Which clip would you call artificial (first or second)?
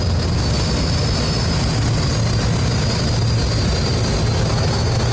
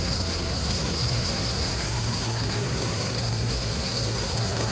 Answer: second